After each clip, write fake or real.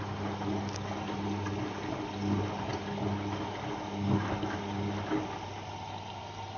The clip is real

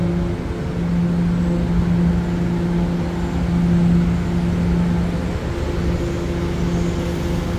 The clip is real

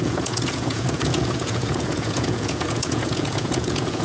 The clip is fake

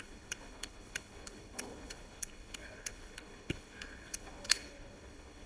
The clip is fake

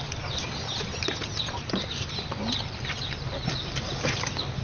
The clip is real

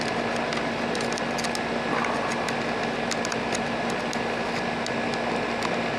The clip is real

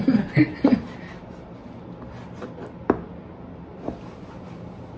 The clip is real